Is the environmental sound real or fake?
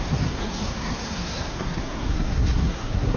fake